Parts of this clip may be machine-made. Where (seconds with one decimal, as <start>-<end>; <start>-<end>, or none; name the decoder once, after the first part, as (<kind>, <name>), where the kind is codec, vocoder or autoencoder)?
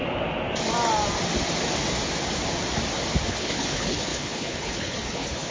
3.3-5.5 (codec, HILCodec)